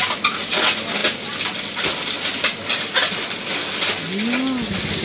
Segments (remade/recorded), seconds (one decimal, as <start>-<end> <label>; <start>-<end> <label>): 0.0-5.0 recorded